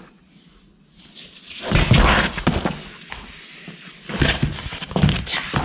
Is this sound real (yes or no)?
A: yes